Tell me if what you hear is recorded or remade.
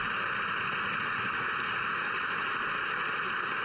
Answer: recorded